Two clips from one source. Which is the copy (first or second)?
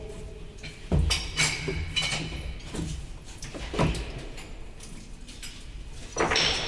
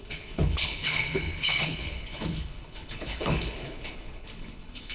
second